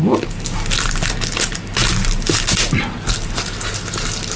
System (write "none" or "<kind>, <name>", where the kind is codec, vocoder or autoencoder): none